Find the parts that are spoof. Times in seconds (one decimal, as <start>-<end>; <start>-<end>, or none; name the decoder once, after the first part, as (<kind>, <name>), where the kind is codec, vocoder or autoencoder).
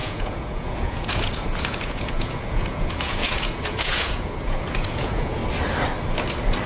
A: 0.0-5.4 (vocoder, Vocos)